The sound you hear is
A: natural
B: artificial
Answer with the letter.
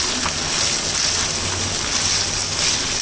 A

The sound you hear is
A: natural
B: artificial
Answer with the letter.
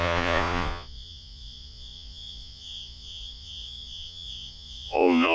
B